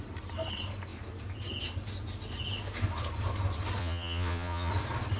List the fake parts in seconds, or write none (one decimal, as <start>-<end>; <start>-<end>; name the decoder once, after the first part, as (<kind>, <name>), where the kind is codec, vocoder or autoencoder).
3.8-4.7 (vocoder, Vocos)